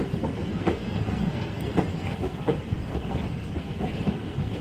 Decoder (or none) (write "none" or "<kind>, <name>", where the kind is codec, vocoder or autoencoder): codec, SNAC